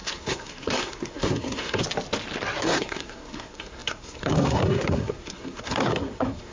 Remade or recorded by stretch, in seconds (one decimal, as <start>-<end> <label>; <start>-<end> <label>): 0.0-1.8 remade; 1.8-2.6 recorded; 2.6-6.5 remade